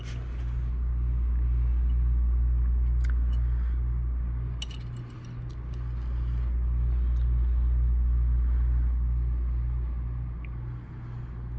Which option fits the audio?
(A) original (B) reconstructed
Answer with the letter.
A